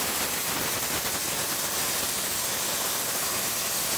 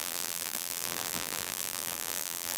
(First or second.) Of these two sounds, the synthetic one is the second